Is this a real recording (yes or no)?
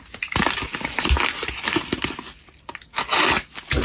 yes